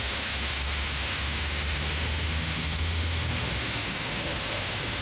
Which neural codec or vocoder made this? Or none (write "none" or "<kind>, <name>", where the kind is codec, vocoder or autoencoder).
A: autoencoder, DAC-VAE